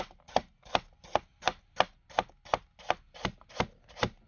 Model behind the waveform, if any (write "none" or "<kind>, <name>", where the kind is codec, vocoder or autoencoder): none